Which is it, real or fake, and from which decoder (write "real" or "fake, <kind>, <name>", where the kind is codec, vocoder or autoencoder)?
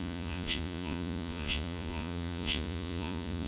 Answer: fake, vocoder, Vocos